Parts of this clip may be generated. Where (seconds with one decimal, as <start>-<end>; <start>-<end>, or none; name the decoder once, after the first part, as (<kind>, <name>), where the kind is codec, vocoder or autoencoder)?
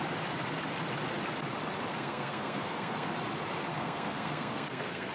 1.9-3.1 (codec, SNAC); 3.7-5.1